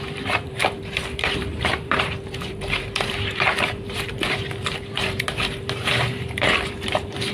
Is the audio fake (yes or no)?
yes